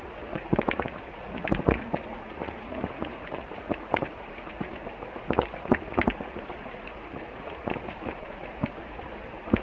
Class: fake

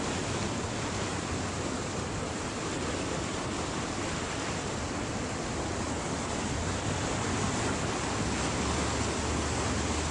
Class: real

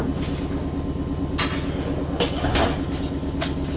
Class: real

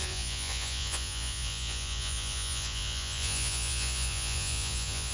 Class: fake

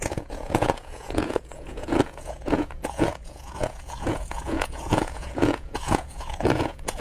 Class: fake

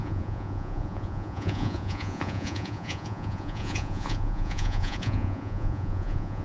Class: fake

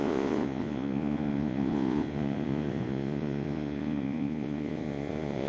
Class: fake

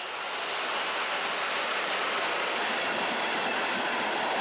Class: real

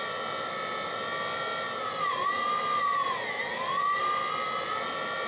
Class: real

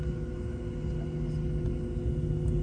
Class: real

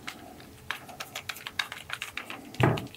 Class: real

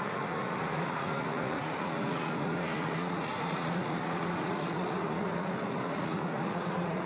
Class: fake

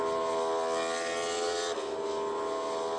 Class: real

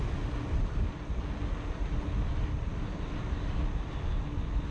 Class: real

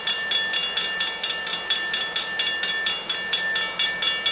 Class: real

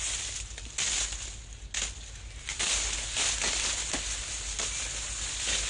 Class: real